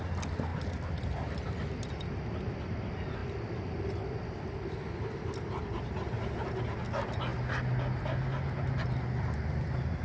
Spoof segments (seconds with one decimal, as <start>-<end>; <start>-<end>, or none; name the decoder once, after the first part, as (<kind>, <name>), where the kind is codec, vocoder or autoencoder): 0.5-1.5 (vocoder, BigVGAN v2); 3.2-3.9